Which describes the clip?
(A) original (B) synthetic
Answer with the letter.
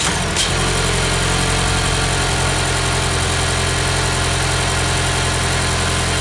A